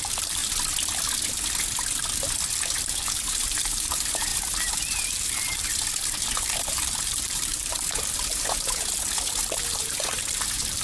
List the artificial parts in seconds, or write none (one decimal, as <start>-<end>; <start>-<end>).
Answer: 0.0-0.4; 2.8-10.8